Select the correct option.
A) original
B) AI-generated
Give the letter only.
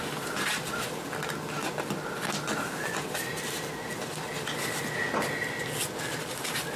A